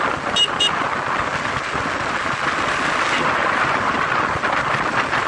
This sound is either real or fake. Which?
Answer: real